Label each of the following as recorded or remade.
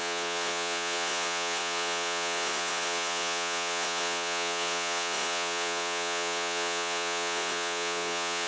remade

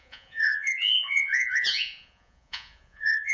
remade